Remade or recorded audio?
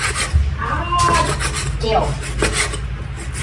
recorded